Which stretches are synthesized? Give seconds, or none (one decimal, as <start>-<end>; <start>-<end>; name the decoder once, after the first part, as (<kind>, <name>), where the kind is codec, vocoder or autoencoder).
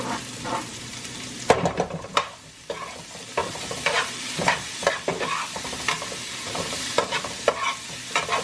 0.7-2.1 (vocoder, BigVGAN v2); 3.4-4.9; 6.2-7.5